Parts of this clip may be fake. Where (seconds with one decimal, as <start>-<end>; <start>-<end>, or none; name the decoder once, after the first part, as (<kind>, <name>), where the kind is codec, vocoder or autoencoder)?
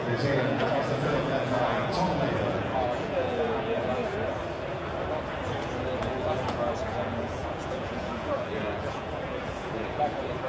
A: 0.0-4.0 (vocoder, Vocos); 6.0-10.5